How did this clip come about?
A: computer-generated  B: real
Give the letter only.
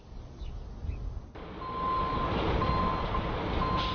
B